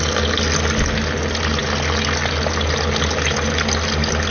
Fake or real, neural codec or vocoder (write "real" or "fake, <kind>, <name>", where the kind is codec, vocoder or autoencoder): real